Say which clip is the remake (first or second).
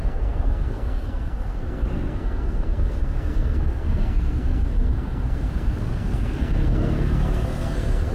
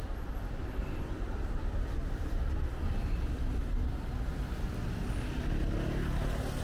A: first